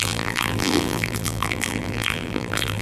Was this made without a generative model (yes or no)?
no